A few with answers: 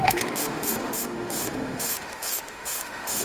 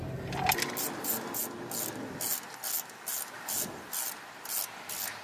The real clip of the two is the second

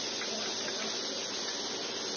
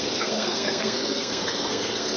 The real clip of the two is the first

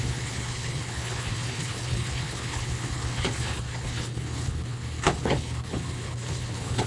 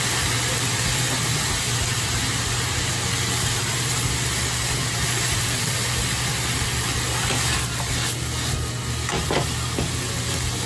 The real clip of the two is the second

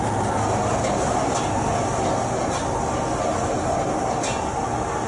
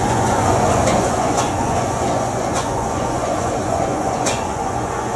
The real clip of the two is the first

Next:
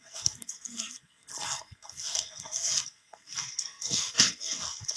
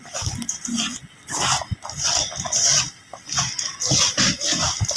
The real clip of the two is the second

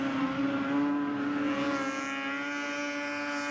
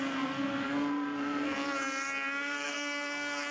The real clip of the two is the first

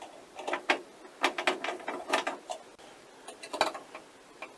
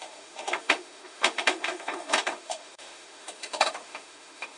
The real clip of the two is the first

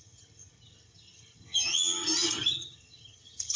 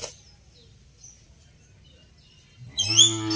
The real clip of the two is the second